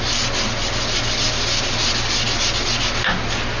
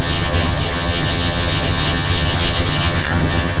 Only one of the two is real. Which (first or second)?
first